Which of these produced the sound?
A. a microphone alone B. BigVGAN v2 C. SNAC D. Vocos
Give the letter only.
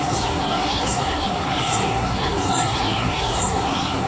C